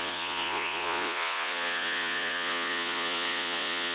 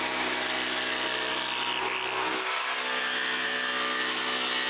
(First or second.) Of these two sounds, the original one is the second